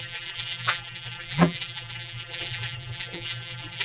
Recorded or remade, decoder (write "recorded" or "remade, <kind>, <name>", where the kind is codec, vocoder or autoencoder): remade, vocoder, BigVGAN v2